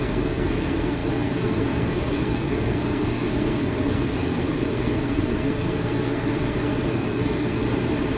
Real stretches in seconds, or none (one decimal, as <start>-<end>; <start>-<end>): 7.6-8.2